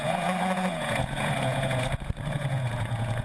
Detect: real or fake fake